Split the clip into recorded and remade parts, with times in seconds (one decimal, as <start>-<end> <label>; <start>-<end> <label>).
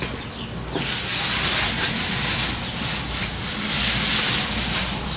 0.0-5.2 recorded